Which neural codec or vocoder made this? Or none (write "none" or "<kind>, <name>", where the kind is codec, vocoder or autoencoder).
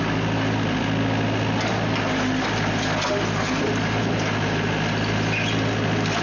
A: none